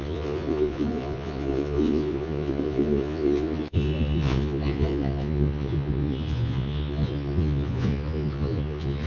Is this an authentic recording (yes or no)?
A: no